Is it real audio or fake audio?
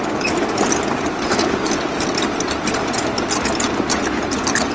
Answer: real